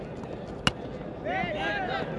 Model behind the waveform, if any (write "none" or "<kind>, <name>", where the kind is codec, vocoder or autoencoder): none